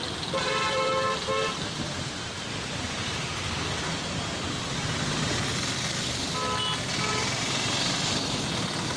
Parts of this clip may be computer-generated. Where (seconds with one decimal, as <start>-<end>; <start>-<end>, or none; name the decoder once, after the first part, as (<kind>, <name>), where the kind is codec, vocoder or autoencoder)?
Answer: 0.0-3.3 (vocoder, BigVGAN v2); 4.2-5.5; 7.1-9.0